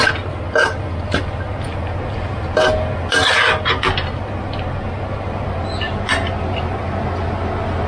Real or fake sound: real